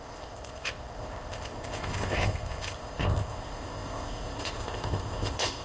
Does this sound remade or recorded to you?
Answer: remade